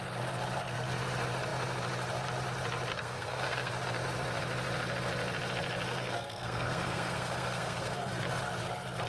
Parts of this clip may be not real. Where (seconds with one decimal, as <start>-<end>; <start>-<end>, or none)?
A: 2.9-3.7; 5.9-8.1